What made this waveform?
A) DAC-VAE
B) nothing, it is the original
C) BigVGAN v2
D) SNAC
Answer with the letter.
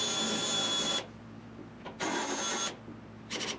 B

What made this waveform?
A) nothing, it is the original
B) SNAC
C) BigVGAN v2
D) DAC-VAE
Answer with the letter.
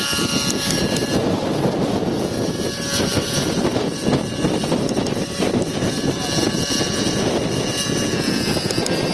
A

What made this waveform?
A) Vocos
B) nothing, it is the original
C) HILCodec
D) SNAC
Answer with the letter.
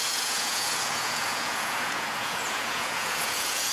A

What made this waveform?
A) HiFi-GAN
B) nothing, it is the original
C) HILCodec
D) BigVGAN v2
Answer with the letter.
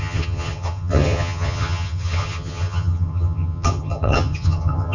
A